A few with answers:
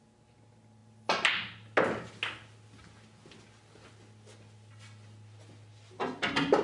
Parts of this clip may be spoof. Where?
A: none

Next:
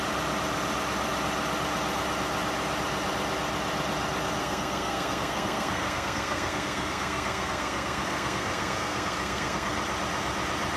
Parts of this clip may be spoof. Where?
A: 4.4-9.7 (codec, SNAC)

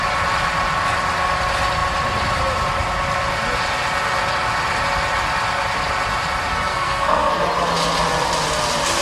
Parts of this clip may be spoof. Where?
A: 6.5-7.3 (codec, SNAC)

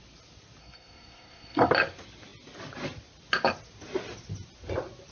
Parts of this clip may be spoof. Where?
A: 0.6-1.7 (codec, SNAC)

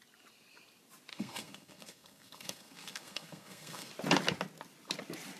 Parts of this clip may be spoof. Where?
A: 1.1-3.9 (codec, SNAC)